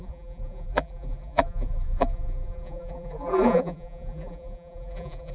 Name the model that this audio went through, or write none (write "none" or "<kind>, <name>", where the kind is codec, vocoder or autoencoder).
vocoder, BigVGAN v2